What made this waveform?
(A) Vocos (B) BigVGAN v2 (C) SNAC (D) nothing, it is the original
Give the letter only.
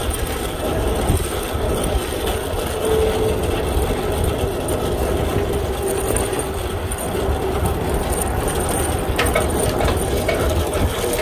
D